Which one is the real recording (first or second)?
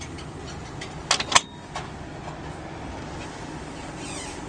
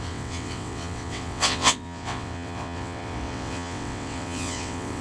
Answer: first